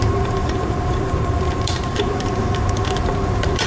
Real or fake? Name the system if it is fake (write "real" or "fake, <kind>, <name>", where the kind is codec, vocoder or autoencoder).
fake, vocoder, BigVGAN v2